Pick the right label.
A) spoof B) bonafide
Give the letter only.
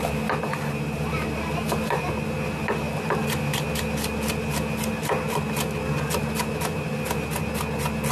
B